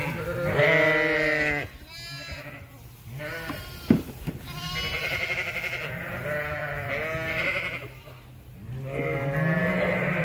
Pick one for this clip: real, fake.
real